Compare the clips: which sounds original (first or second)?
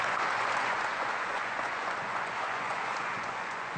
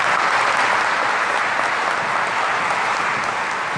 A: second